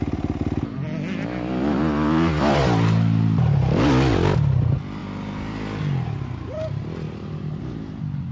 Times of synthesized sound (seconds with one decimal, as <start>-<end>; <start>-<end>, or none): none